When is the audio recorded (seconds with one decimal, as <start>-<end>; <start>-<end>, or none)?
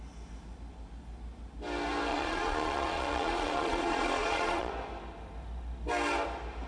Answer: 0.0-2.1; 4.7-6.7